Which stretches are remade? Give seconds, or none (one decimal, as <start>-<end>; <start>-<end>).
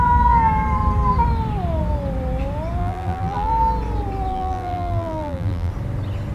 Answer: 2.8-3.5; 4.3-5.7